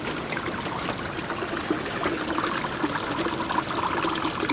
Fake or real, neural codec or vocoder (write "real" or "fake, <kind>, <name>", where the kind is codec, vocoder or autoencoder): real